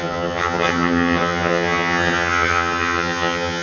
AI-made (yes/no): yes